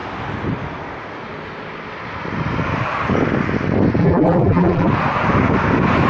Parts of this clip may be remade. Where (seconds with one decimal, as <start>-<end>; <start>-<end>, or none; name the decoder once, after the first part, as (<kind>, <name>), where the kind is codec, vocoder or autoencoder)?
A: 4.0-4.9 (vocoder, BigVGAN v2)